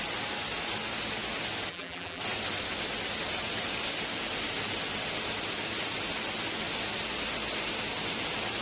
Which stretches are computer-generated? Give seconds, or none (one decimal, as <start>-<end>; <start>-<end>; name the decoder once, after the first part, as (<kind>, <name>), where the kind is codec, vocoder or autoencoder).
1.7-2.2 (vocoder, BigVGAN v2)